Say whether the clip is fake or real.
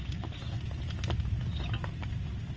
real